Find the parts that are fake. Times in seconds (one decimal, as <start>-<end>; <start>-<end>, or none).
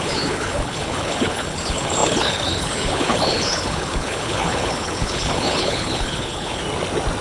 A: 0.0-6.6